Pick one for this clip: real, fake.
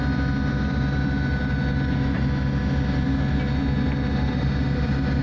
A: real